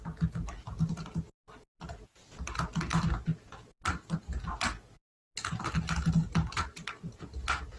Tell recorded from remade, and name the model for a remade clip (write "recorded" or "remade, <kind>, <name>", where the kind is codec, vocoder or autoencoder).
recorded